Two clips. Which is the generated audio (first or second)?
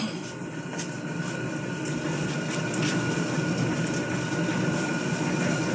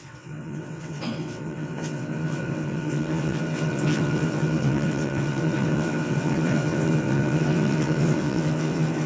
second